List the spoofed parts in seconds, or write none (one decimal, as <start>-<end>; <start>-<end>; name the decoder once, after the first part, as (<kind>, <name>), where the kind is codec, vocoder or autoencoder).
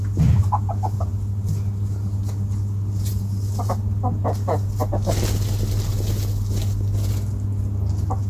none